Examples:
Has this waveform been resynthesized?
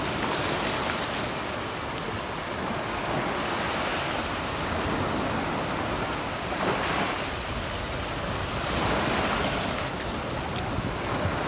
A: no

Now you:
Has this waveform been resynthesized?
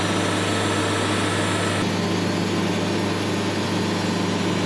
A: no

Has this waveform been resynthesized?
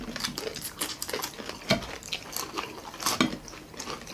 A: no